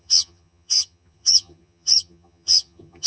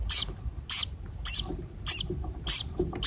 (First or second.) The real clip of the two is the second